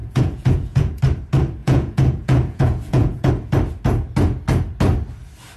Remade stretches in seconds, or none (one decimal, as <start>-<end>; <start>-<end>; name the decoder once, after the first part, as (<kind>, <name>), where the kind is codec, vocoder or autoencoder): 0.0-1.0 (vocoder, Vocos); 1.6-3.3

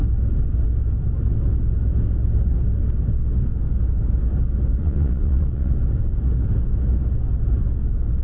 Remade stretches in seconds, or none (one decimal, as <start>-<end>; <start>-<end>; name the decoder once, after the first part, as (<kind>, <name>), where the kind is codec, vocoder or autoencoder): 4.8-5.7 (vocoder, Vocos)

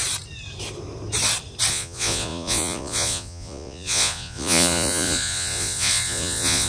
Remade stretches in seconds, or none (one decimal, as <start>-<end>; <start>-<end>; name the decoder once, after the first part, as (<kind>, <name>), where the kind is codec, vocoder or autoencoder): 1.7-6.7 (vocoder, Vocos)

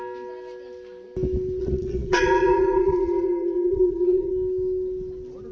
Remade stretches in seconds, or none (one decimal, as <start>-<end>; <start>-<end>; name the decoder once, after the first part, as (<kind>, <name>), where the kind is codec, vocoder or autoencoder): 1.6-4.3 (vocoder, Vocos)

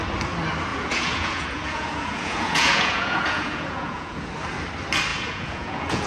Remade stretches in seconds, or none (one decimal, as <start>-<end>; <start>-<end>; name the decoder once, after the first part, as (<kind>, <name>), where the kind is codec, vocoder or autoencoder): 0.7-4.3 (vocoder, Vocos); 5.1-6.1